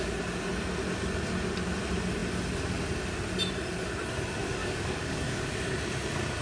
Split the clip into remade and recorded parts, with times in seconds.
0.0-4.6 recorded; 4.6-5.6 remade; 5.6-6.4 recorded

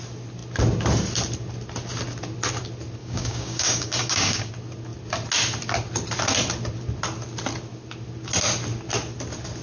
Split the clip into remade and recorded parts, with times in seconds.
0.0-3.0 recorded; 3.0-4.5 remade; 4.5-9.6 recorded

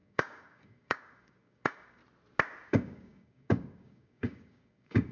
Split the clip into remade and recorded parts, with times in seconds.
0.0-2.0 remade; 2.0-2.7 recorded; 2.7-5.1 remade

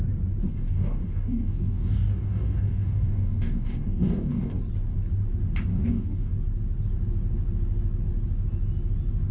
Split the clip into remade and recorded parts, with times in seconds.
0.0-0.5 recorded; 0.5-4.6 remade; 4.6-5.7 recorded; 5.7-6.3 remade; 6.3-9.3 recorded

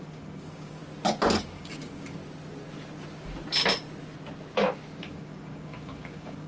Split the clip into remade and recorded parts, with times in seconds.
0.0-0.8 remade; 0.8-1.4 recorded; 1.4-2.2 remade; 2.2-5.0 recorded; 5.0-6.5 remade

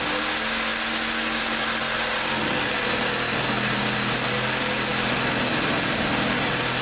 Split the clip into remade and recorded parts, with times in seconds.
0.0-6.8 recorded